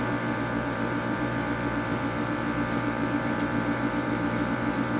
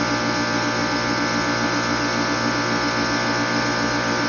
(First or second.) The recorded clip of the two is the second